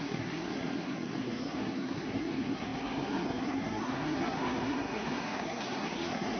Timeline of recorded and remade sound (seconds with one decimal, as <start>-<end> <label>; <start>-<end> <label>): 0.0-6.4 remade